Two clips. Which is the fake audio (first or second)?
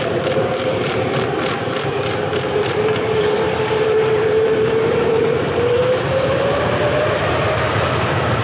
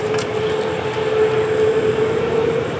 first